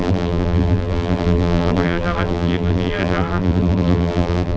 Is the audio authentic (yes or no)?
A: no